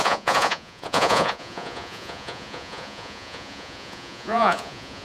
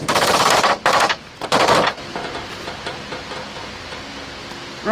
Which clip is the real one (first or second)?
second